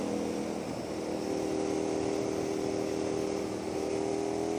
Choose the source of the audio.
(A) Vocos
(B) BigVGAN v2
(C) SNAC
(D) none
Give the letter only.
D